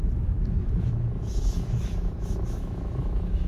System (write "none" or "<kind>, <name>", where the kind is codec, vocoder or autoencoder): autoencoder, DAC-VAE